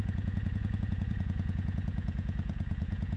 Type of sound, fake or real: fake